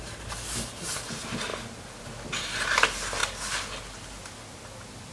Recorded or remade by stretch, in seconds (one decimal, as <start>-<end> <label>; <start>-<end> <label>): 0.0-5.1 recorded